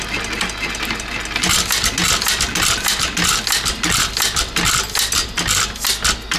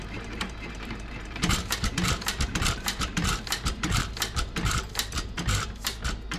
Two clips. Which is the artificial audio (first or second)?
second